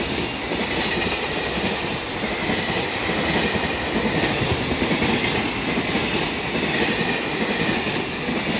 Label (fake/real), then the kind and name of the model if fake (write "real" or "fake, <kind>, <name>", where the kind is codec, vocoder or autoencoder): real